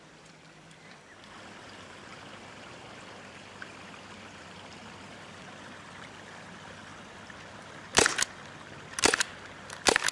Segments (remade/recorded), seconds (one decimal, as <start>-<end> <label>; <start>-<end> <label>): 0.0-6.9 remade; 6.9-10.1 recorded